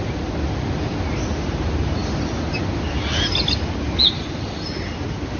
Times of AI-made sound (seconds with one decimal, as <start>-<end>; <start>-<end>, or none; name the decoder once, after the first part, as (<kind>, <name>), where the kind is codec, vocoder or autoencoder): none